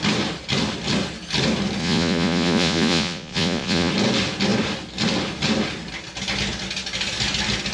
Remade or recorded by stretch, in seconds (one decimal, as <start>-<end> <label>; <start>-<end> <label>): 0.0-1.8 recorded; 1.8-3.9 remade; 3.9-7.7 recorded